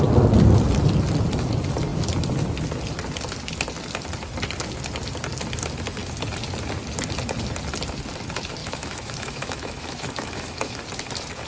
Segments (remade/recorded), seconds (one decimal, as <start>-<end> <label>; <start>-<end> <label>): 0.0-8.6 recorded; 8.6-10.8 remade; 10.8-11.5 recorded